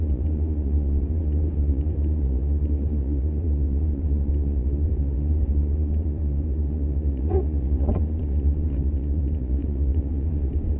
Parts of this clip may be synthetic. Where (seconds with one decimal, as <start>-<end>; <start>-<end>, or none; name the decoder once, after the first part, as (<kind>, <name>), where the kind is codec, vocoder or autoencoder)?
0.0-10.8 (vocoder, Vocos)

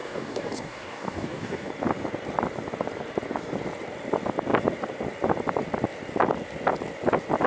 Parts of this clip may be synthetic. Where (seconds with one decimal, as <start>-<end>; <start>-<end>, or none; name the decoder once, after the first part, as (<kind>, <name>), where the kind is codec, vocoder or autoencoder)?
0.0-1.7 (codec, DAC)

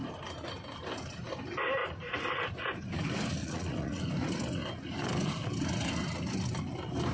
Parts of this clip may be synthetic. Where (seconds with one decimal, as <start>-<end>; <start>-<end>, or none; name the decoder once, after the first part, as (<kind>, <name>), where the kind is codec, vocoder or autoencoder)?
3.4-4.0 (vocoder, Vocos)

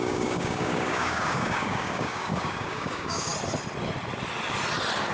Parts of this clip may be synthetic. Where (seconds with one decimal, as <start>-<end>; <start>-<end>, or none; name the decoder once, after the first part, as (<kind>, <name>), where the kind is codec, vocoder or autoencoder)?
0.0-3.3 (codec, DAC)

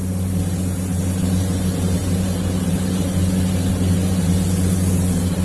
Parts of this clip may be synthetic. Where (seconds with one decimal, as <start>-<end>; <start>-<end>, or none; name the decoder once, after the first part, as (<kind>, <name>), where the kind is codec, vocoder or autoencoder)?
none

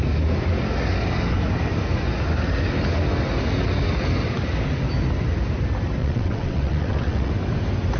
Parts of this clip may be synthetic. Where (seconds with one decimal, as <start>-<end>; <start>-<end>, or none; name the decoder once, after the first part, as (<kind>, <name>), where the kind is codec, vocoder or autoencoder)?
6.0-7.3 (vocoder, WaveNeXt)

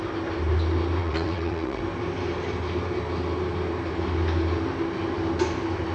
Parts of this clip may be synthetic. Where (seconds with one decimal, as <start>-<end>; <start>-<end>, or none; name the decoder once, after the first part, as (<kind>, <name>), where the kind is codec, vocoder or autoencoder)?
1.0-1.8 (vocoder, WaveNeXt)

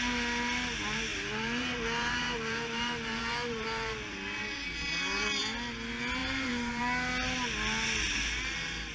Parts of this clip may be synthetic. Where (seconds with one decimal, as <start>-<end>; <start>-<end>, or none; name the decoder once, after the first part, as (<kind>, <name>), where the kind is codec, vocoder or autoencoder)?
1.1-5.4 (vocoder, BigVGAN v2); 6.2-6.8